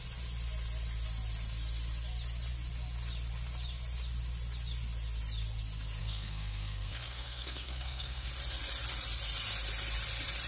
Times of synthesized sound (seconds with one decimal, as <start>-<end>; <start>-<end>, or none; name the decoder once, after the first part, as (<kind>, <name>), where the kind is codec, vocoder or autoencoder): 6.0-8.3 (codec, SNAC)

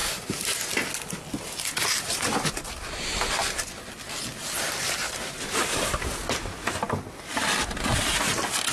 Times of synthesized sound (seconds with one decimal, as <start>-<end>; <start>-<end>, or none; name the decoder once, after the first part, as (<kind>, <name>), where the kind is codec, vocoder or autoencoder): 4.8-6.2 (vocoder, BigVGAN v2)

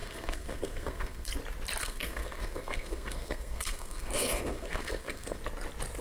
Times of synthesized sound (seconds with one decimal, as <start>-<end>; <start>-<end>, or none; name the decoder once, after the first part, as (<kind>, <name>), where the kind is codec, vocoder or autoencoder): 0.0-1.3 (codec, SNAC); 1.8-5.4

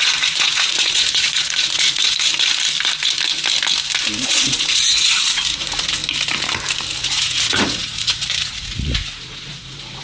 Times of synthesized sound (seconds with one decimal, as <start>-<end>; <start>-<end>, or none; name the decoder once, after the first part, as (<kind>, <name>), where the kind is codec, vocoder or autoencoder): 0.0-2.3 (vocoder, Vocos); 4.2-6.0; 7.0-10.0

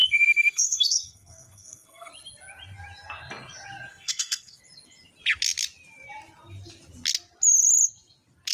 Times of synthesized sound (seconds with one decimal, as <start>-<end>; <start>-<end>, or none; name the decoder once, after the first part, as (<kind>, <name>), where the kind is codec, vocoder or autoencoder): 0.0-2.1 (codec, SNAC); 3.9-4.6